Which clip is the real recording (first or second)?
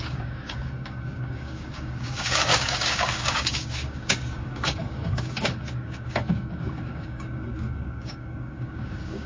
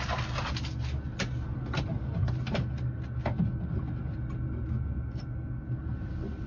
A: second